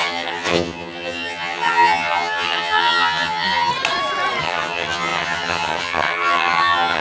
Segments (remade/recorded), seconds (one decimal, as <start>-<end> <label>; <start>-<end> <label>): 0.0-3.7 remade; 3.7-4.4 recorded; 4.4-7.0 remade